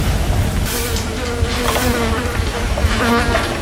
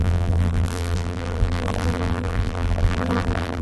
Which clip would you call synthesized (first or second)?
second